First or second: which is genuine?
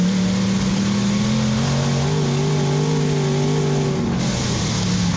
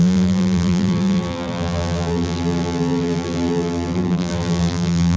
first